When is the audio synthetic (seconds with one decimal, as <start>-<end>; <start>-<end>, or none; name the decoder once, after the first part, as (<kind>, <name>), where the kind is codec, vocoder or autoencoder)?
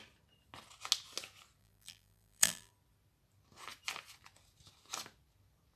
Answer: 1.6-2.7 (vocoder, BigVGAN v2)